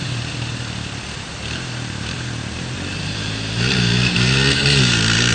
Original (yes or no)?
no